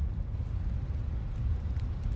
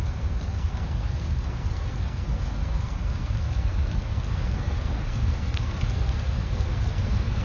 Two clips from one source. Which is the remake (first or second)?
second